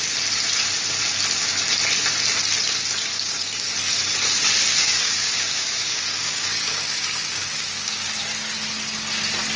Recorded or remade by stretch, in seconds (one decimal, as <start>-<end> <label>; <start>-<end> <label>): 0.0-3.1 recorded; 3.1-3.7 remade; 3.7-4.7 recorded; 4.7-8.1 remade; 8.1-9.6 recorded